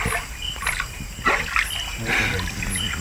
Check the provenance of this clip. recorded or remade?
recorded